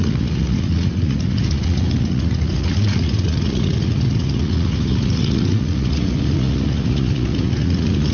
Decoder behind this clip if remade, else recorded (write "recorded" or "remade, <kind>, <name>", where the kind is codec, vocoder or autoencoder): remade, vocoder, Vocos